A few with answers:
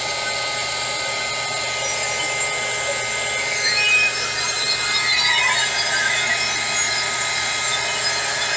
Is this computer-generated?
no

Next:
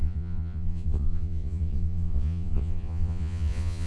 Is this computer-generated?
yes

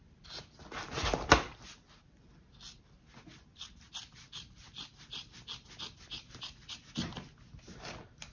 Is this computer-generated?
no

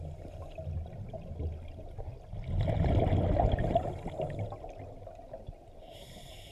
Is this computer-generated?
no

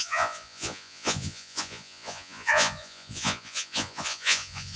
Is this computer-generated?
yes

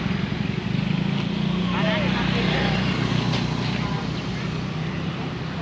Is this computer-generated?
no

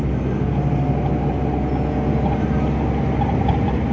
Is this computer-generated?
no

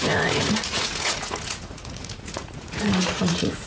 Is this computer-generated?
yes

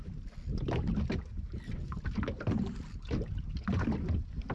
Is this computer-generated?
no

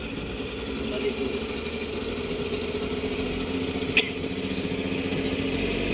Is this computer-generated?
no